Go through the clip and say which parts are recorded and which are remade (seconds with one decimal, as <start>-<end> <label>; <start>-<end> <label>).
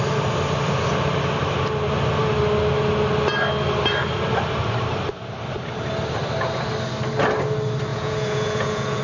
0.0-7.9 recorded; 7.9-9.0 remade